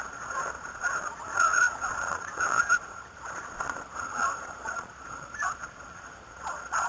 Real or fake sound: fake